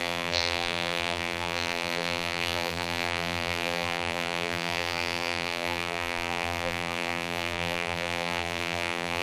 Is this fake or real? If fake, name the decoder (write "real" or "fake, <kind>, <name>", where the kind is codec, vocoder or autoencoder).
fake, vocoder, BigVGAN v2